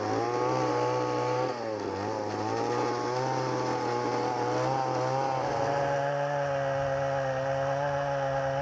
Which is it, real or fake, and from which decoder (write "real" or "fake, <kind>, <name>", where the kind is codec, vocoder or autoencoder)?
real